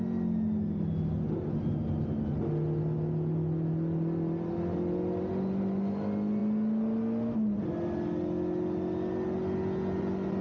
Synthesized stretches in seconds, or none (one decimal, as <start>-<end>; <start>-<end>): none